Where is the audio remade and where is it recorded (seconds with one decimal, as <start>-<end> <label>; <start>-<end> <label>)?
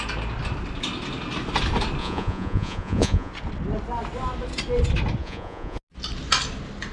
0.0-2.0 recorded; 2.0-3.3 remade; 3.3-5.2 recorded; 5.2-5.8 remade; 5.8-6.9 recorded